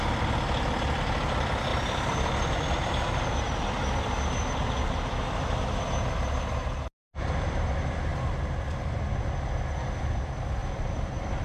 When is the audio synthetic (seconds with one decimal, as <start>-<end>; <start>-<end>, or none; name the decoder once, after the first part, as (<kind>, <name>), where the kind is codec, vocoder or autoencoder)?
1.7-5.6 (vocoder, BigVGAN v2); 10.6-11.4